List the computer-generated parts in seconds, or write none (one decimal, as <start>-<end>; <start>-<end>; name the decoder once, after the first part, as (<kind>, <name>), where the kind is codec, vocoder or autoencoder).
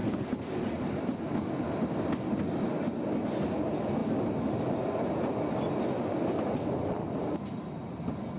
none